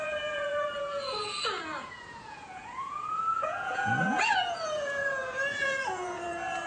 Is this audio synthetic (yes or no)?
yes